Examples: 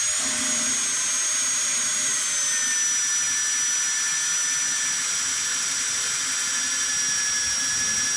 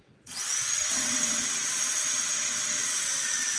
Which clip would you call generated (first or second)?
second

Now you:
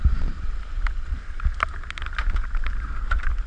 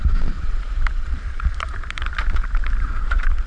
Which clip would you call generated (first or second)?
second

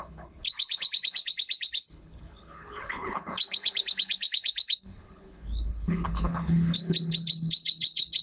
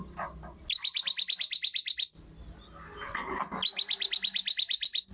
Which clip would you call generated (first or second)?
first